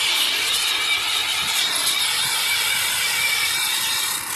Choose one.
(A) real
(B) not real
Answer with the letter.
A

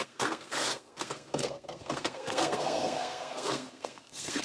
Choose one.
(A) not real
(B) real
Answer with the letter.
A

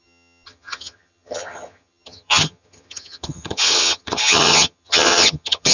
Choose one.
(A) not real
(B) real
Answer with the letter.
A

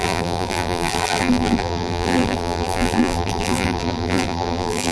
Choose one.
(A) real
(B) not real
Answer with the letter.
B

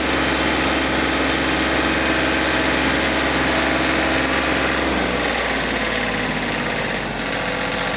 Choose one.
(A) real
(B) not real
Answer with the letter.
A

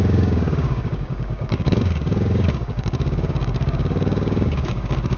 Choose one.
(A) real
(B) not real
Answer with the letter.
B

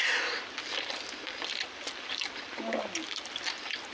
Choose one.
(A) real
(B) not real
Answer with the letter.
B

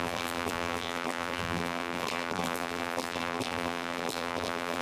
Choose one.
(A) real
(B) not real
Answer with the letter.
B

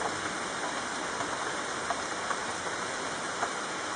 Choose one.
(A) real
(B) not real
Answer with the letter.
A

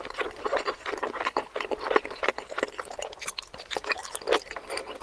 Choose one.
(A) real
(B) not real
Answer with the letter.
B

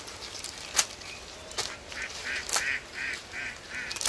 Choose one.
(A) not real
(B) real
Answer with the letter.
B